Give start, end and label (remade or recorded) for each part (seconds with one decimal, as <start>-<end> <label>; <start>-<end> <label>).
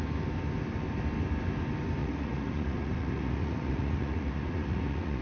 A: 0.0-2.0 recorded; 2.0-5.2 remade